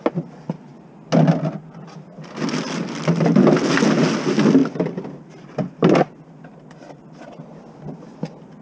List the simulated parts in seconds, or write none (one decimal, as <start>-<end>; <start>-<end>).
none